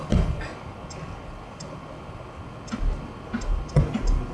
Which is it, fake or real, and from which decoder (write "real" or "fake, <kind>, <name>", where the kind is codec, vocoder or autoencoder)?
real